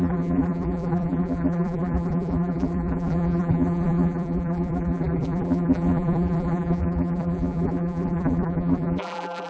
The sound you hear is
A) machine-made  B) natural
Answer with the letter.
A